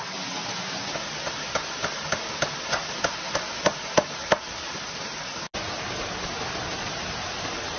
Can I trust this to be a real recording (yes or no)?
yes